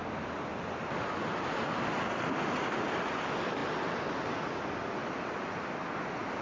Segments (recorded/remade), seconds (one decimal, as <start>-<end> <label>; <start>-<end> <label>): 0.0-6.4 recorded